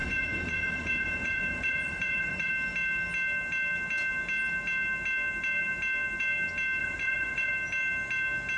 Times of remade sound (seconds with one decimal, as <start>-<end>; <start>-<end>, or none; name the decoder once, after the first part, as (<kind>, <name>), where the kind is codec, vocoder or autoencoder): 0.0-2.5 (vocoder, Vocos); 6.8-7.5